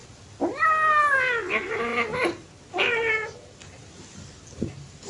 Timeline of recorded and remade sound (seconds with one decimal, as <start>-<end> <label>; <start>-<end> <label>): 0.0-5.1 recorded